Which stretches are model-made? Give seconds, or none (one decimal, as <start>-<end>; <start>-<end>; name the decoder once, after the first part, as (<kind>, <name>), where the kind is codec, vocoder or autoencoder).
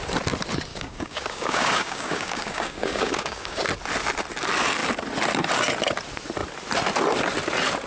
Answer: 0.7-3.6 (codec, DAC)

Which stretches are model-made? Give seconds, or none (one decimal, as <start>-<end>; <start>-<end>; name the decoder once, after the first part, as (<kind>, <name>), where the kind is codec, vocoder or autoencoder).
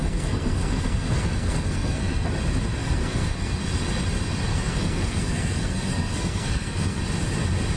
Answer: 0.0-2.3 (codec, SNAC); 2.8-3.6; 4.5-7.0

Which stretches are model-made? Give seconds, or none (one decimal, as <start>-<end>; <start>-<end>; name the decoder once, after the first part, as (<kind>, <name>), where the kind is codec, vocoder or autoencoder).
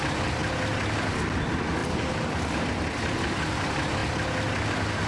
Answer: 1.8-2.6 (vocoder, BigVGAN v2)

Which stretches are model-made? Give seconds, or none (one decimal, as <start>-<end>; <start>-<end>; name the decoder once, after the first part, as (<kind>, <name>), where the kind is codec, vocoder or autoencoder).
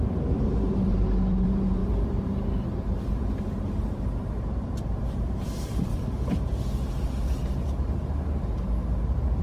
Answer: 0.0-5.9 (vocoder, BigVGAN v2)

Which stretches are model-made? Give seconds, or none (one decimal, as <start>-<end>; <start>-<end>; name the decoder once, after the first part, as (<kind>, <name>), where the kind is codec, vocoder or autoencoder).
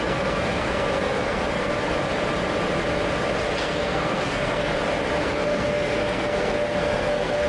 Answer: 0.0-1.7 (codec, SNAC); 3.4-4.7; 5.2-7.5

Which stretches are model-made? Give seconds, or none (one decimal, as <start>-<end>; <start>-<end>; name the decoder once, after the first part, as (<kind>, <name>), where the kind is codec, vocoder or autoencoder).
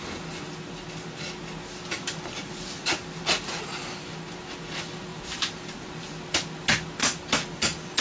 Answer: 2.8-3.6 (vocoder, BigVGAN v2); 5.1-6.1